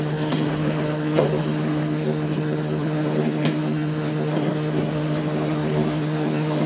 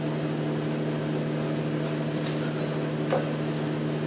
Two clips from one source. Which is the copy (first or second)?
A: first